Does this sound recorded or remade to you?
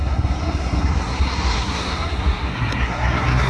remade